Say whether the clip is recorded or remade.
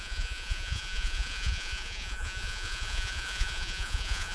remade